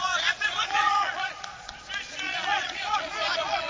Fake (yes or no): yes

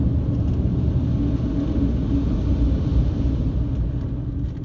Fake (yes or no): no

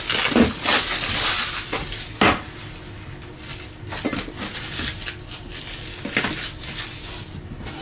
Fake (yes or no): no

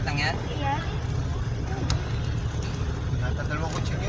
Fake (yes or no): no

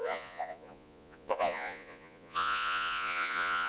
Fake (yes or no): yes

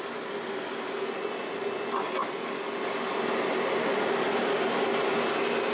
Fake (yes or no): no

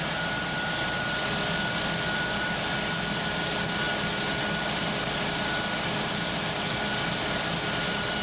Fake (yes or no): no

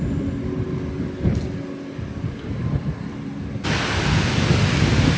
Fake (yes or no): no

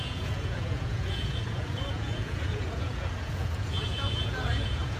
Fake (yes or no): yes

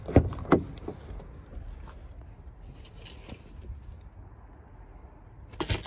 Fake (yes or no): no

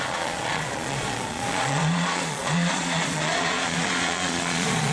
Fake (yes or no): yes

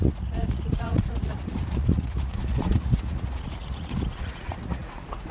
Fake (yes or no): yes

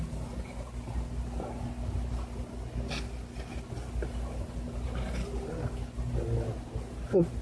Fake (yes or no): no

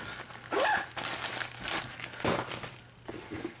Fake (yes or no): no